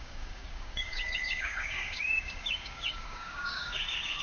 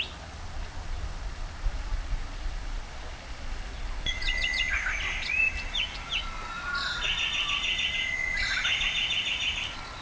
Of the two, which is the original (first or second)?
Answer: second